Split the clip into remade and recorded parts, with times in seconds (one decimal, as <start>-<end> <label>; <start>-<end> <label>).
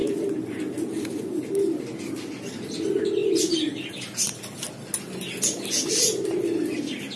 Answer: 0.0-7.2 recorded